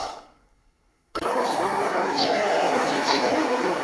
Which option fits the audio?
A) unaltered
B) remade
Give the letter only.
B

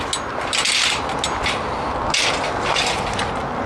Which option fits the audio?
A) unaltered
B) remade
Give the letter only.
A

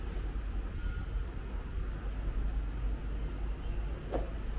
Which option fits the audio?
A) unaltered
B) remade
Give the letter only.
A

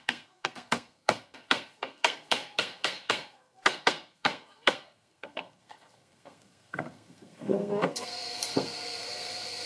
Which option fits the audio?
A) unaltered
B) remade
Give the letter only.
B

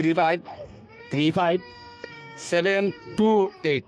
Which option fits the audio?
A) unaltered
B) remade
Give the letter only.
B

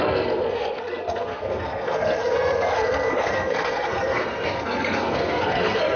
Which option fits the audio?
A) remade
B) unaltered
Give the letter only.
A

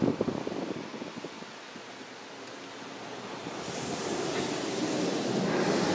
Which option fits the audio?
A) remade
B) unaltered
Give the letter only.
B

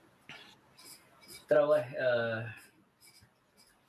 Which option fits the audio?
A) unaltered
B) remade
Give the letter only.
A